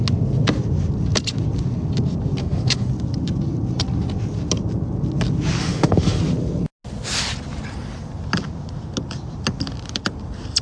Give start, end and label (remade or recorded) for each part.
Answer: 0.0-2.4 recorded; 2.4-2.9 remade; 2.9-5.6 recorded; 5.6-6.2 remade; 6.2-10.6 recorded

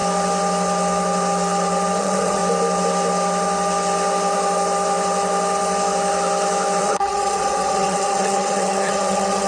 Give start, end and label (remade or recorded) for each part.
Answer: 0.0-2.0 recorded; 2.0-2.4 remade; 2.4-6.8 recorded; 6.8-9.5 remade